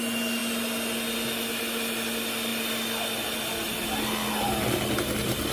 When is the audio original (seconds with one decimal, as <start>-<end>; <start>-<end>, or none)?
0.0-5.5